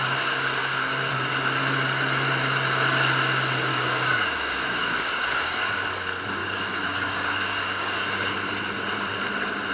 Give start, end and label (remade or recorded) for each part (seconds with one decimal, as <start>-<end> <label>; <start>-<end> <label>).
0.0-0.6 recorded; 0.6-1.1 remade; 1.1-3.7 recorded; 3.7-5.7 remade; 5.7-6.4 recorded; 6.4-8.1 remade; 8.1-9.7 recorded